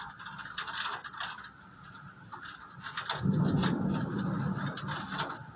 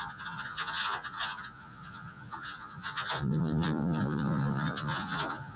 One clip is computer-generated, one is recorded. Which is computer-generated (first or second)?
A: second